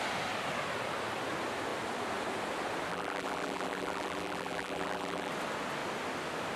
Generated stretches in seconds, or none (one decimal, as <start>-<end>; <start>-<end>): 2.9-5.3